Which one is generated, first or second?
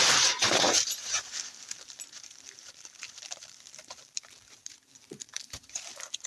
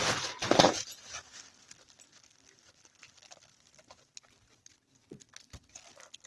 first